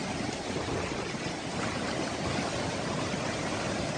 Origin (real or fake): real